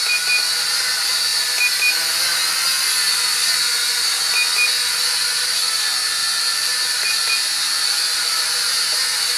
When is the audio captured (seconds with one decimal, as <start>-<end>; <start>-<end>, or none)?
0.0-6.2; 8.8-9.4